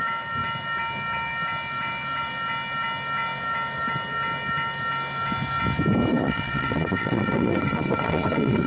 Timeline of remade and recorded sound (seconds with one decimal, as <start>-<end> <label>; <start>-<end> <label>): 0.0-6.1 recorded; 6.1-8.7 remade